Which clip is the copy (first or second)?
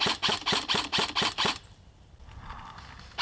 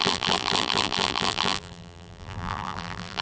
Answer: second